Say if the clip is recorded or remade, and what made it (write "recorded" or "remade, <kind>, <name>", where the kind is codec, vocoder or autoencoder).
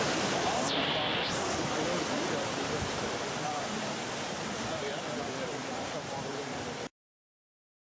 remade, vocoder, BigVGAN v2